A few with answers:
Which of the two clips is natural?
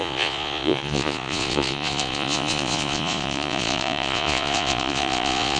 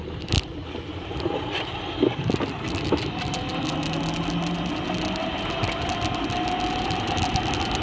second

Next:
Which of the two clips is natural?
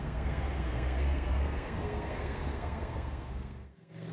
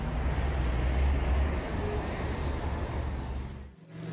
second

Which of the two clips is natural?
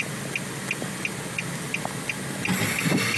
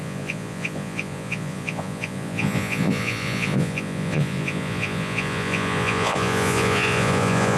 first